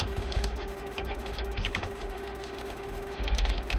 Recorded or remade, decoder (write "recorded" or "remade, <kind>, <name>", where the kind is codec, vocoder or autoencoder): remade, autoencoder, DAC-VAE